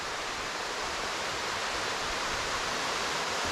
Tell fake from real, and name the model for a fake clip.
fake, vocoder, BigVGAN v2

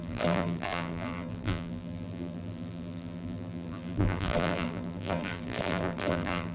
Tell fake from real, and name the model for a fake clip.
fake, vocoder, BigVGAN v2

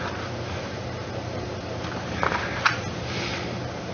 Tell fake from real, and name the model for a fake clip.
fake, vocoder, BigVGAN v2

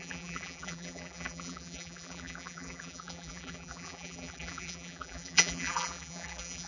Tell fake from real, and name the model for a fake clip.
fake, vocoder, BigVGAN v2